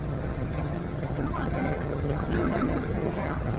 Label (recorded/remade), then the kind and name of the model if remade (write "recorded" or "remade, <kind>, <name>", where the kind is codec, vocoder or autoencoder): remade, vocoder, HiFi-GAN